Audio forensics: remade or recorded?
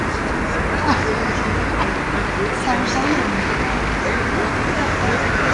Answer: recorded